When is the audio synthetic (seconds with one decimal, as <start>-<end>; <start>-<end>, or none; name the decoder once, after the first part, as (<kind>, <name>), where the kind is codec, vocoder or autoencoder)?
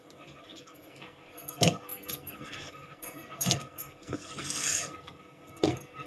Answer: 0.0-6.1 (codec, SNAC)